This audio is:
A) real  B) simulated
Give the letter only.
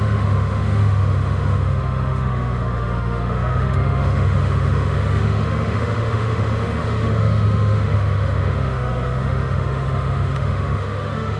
B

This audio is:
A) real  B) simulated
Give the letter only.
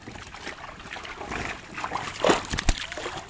A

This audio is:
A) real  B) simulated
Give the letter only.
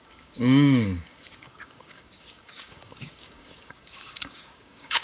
B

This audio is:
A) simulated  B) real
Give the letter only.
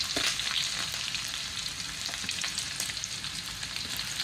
B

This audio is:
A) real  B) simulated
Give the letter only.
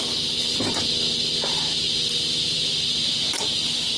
A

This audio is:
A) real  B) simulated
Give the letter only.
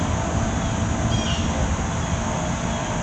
A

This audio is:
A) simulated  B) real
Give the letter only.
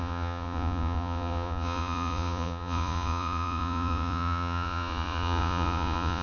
A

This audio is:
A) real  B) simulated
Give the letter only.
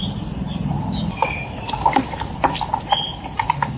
A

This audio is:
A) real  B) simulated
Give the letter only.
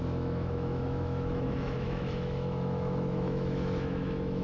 B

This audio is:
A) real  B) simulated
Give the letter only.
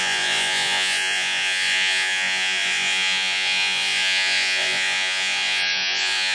B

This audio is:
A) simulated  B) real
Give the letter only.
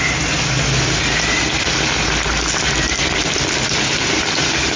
B